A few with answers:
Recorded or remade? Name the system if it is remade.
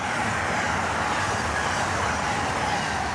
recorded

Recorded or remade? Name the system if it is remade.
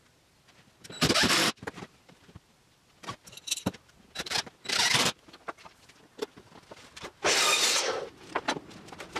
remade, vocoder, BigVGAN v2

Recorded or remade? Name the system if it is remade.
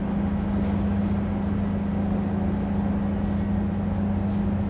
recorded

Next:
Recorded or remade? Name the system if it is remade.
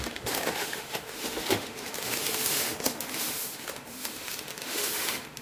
remade, autoencoder, DAC-VAE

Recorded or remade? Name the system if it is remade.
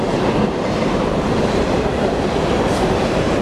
remade, vocoder, BigVGAN v2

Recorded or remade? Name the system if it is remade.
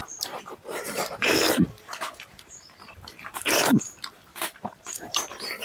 remade, vocoder, BigVGAN v2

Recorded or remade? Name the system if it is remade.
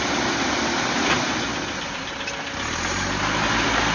recorded